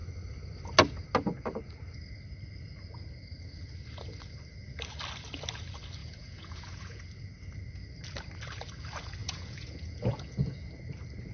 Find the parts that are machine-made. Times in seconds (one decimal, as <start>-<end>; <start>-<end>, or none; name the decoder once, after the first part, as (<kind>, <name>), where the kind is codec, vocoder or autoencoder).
6.0-7.0 (vocoder, Vocos); 9.2-10.6